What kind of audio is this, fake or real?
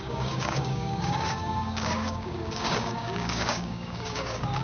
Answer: fake